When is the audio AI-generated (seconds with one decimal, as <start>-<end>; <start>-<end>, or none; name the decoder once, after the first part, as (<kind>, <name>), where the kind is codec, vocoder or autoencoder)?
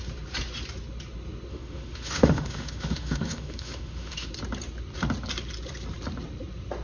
1.5-4.3 (autoencoder, DAC-VAE)